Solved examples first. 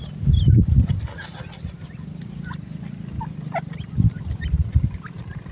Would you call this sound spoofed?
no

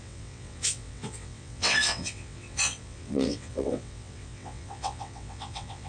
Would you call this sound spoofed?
yes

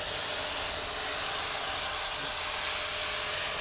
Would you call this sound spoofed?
no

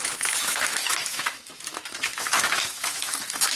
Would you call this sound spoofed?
yes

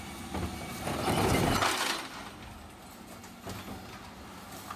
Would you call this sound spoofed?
no